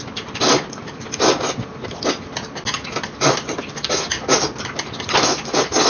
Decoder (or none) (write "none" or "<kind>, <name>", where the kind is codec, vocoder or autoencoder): none